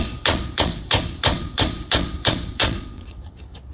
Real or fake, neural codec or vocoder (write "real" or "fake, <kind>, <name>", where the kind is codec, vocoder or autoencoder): fake, vocoder, Vocos